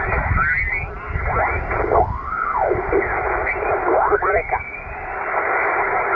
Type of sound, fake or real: real